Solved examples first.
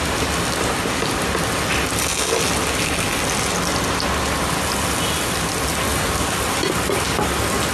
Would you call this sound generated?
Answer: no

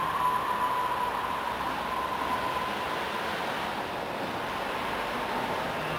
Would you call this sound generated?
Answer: no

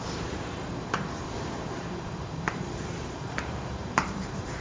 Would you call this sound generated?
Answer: yes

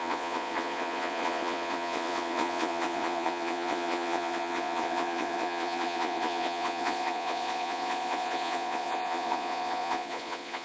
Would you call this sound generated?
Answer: yes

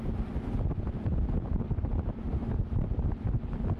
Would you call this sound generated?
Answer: no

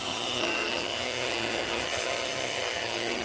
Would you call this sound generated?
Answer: yes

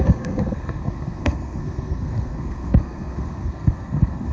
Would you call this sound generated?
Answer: yes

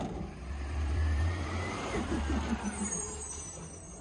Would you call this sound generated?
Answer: yes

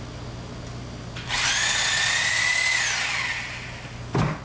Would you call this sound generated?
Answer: no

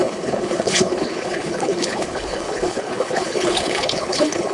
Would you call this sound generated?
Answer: yes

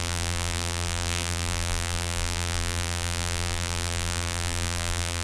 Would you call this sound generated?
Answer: yes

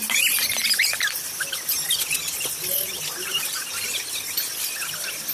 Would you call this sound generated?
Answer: no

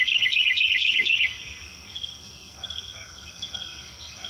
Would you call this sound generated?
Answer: yes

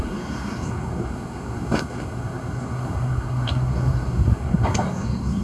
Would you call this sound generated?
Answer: yes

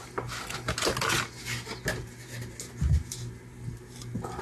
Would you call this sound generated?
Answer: no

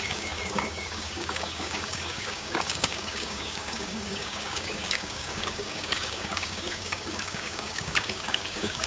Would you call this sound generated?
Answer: yes